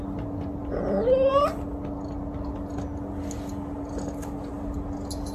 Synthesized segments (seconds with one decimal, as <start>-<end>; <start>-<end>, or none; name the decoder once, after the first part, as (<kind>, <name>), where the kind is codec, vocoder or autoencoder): none